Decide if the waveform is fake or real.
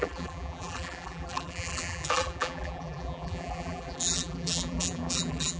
fake